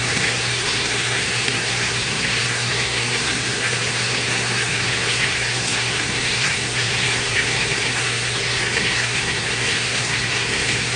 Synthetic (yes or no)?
yes